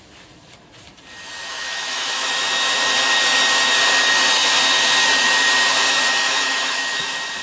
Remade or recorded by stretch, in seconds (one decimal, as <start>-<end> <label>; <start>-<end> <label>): 0.0-1.5 recorded; 1.5-2.3 remade; 2.3-6.2 recorded; 6.2-7.0 remade; 7.0-7.4 recorded